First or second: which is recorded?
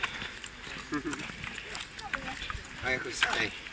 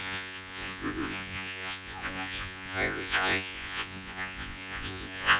first